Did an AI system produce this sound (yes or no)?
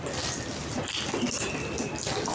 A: no